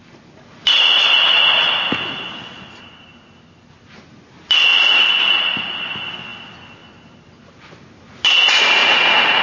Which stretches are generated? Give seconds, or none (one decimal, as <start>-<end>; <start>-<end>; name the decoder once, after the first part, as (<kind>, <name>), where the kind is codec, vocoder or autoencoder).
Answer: none